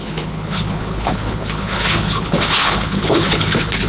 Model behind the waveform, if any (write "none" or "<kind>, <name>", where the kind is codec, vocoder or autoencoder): codec, HILCodec